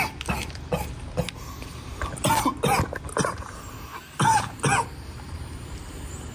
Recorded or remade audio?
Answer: recorded